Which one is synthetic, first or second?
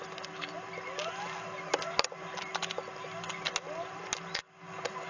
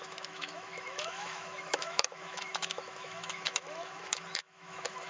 second